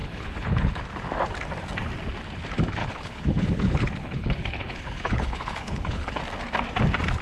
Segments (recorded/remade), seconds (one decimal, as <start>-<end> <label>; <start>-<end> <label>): 0.0-0.8 remade; 0.8-2.8 recorded; 2.8-6.2 remade; 6.2-7.2 recorded